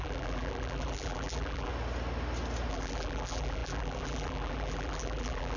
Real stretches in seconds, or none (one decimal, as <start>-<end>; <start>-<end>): 1.7-2.7